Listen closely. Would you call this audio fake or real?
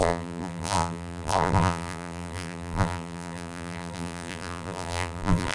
fake